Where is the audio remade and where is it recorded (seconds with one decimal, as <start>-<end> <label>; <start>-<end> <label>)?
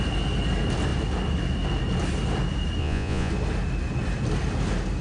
0.0-2.8 recorded; 2.8-3.3 remade; 3.3-5.0 recorded